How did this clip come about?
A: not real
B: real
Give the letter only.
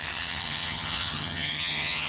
A